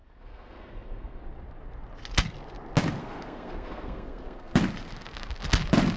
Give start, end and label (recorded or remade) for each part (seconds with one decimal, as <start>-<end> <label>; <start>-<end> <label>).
0.0-1.2 remade; 1.2-3.0 recorded; 3.0-4.6 remade; 4.6-6.0 recorded